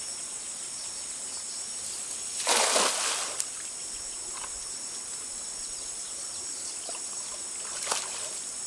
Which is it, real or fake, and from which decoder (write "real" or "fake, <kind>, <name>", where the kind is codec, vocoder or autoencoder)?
real